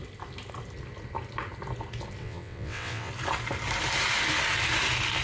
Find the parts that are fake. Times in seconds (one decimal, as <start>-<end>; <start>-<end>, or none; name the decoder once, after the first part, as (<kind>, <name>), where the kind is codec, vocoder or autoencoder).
2.2-3.1 (vocoder, WaveNeXt)